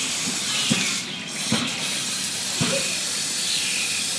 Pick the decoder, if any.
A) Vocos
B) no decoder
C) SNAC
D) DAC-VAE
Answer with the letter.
B